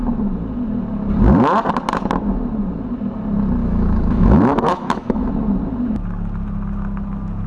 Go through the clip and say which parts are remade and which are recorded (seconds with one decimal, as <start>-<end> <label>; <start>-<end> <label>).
0.0-3.6 recorded; 3.6-5.3 remade; 5.3-7.5 recorded